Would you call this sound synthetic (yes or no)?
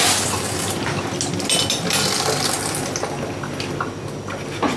no